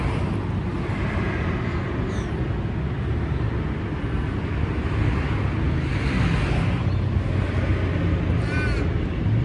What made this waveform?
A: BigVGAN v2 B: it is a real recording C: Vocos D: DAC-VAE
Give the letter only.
B